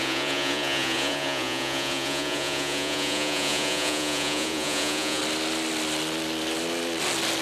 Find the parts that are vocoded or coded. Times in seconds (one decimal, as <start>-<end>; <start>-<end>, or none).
0.0-5.2